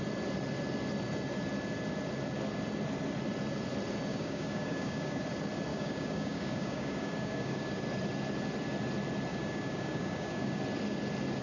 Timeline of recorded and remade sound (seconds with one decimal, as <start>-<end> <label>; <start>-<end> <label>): 0.0-4.1 recorded; 4.1-5.2 remade; 5.2-5.7 recorded; 5.7-7.8 remade; 7.8-9.3 recorded; 9.3-10.6 remade; 10.6-11.4 recorded